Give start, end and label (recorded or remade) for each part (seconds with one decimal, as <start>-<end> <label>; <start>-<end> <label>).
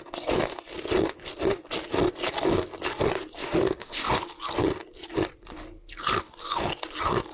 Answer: 0.0-3.4 recorded; 3.4-4.1 remade; 4.1-7.3 recorded